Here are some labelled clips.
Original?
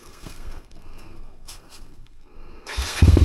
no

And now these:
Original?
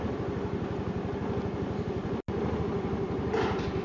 yes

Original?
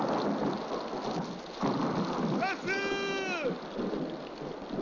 yes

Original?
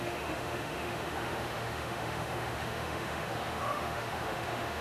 no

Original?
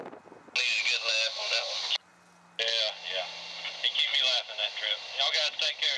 yes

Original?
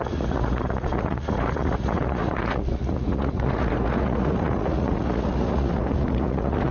no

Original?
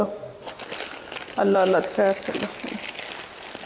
yes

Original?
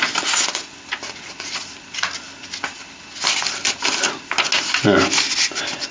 yes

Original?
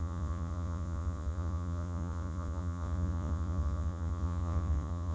no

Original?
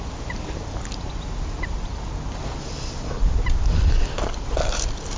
yes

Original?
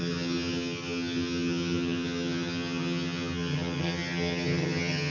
no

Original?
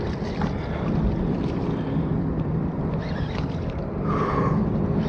yes